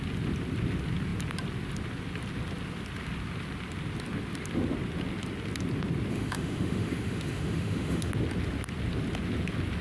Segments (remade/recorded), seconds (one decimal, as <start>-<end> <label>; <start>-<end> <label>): 0.0-6.1 recorded; 6.1-8.1 remade; 8.1-9.8 recorded